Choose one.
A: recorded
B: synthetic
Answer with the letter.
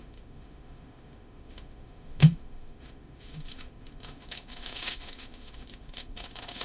B